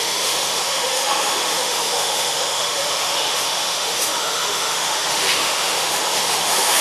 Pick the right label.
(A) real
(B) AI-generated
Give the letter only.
B